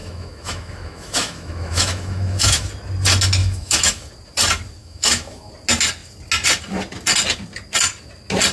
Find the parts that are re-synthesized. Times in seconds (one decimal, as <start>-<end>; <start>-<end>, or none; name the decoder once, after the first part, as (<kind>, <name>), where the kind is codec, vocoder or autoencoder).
0.0-2.7 (autoencoder, DAC-VAE); 3.4-4.1; 4.8-5.5